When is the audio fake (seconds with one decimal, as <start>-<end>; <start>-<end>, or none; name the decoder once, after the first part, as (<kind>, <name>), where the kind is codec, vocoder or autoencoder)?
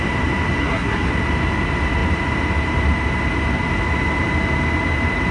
0.6-1.1 (codec, SNAC)